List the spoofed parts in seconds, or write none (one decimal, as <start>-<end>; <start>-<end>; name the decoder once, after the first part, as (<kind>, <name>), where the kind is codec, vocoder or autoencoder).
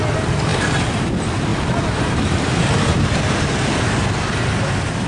0.5-1.1 (vocoder, BigVGAN v2); 1.5-4.6